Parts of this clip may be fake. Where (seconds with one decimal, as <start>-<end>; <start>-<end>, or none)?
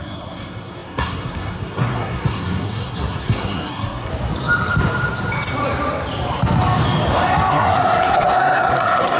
0.0-4.1; 7.5-9.2